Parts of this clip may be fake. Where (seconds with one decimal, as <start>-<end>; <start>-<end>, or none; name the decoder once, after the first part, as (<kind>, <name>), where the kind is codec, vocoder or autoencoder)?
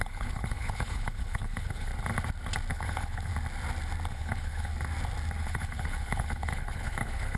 0.0-1.9 (codec, HILCodec); 2.7-3.3; 4.1-4.7; 5.4-7.4